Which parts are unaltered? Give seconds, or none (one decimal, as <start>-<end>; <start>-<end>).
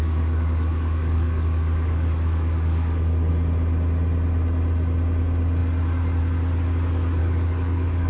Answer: 3.3-7.2